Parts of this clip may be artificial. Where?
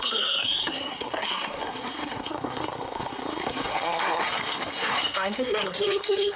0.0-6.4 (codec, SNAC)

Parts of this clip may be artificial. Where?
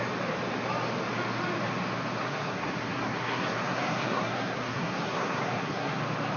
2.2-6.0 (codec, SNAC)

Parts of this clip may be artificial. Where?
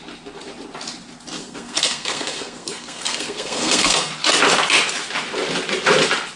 1.4-4.1 (codec, SNAC)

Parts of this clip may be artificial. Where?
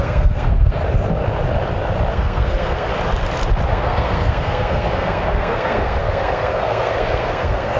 0.0-0.8 (codec, SNAC); 2.1-2.9; 3.7-7.8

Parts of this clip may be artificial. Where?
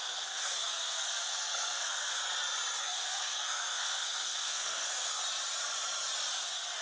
0.0-2.2 (codec, SNAC); 2.8-5.2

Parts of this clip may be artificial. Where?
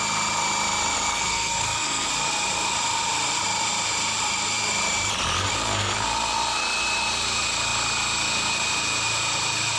1.1-2.1 (codec, SNAC)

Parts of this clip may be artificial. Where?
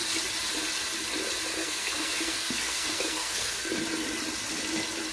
1.6-3.7 (codec, SNAC)